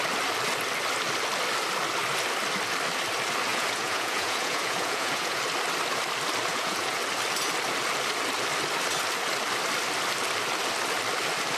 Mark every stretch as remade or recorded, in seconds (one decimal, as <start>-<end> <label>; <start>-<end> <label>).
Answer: 0.0-3.5 recorded; 3.5-5.4 remade; 5.4-6.5 recorded; 6.5-7.0 remade; 7.0-11.6 recorded